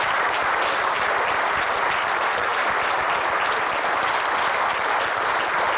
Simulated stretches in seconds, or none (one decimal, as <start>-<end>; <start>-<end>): none